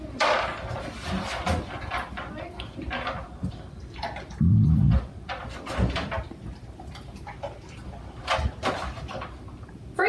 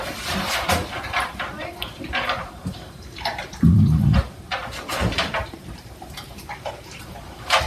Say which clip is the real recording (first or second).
first